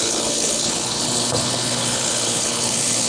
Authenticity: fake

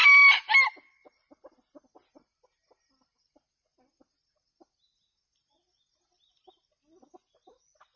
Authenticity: real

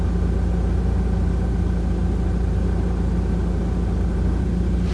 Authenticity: real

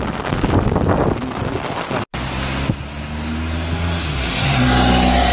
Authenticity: real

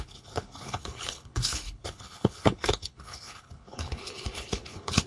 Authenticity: fake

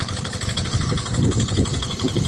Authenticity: fake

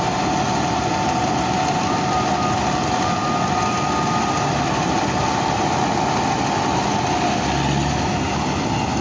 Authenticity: real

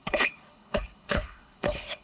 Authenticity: fake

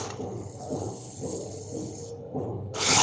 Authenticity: fake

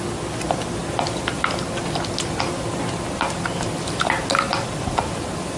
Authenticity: real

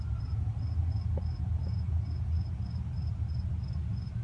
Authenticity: real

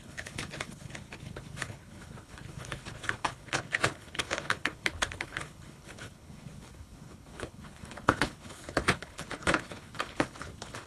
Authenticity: fake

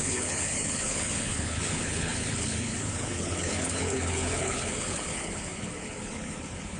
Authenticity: fake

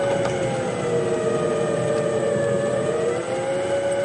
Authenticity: real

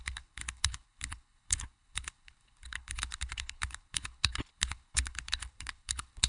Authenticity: fake